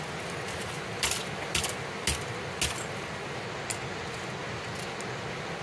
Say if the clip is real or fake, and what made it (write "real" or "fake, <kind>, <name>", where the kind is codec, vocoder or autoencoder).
real